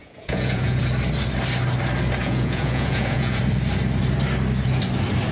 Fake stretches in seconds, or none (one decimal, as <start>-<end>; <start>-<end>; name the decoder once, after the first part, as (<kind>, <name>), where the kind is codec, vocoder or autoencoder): 0.0-0.8 (vocoder, Vocos); 2.2-3.4